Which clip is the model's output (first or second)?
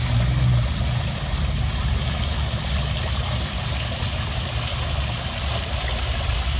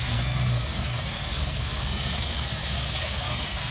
second